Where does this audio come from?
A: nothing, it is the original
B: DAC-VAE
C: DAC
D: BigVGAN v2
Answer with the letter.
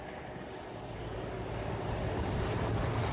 A